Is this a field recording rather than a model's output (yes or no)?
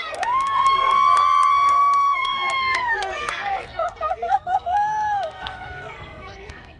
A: no